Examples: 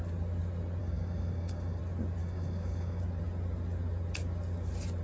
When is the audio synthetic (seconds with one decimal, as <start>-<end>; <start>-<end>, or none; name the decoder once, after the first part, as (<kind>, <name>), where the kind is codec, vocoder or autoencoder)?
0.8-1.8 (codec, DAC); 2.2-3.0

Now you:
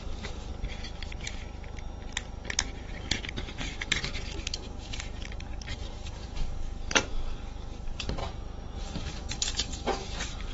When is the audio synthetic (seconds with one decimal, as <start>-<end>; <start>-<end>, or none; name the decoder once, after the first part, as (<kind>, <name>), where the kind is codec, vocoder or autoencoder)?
0.0-0.5 (codec, DAC); 2.9-8.2; 8.8-10.5

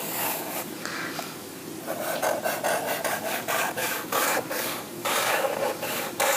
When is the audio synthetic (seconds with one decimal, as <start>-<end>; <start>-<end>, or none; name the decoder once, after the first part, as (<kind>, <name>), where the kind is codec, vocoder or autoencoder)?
0.0-1.6 (codec, DAC); 3.1-6.4

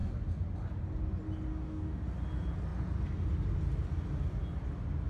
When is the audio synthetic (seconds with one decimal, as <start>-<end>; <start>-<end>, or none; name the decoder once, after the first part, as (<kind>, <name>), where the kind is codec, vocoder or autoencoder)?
1.5-2.0 (codec, DAC)

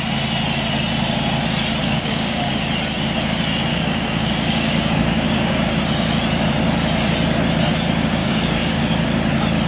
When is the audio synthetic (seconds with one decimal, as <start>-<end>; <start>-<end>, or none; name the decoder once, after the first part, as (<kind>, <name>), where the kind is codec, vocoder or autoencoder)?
1.8-2.5 (codec, DAC); 3.7-5.7; 8.2-8.8

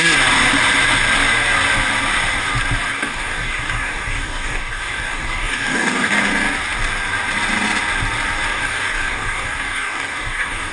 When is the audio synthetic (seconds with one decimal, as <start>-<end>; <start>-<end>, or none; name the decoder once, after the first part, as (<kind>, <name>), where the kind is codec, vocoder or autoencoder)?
2.9-6.3 (codec, DAC); 8.5-10.7